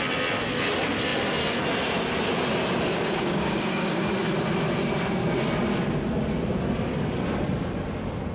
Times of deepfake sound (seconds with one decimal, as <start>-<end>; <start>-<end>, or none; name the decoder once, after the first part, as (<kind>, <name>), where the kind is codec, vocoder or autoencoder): 2.9-4.1 (codec, DAC)